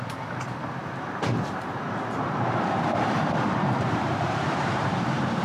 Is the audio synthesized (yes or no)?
yes